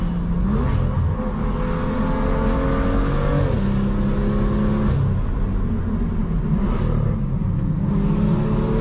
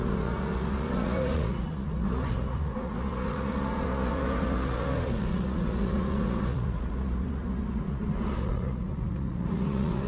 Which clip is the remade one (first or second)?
second